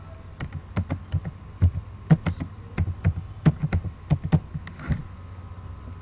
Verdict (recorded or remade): recorded